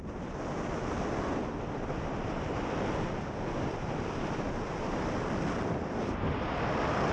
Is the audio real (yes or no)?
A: yes